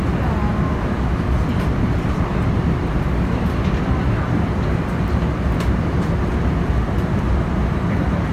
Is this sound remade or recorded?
recorded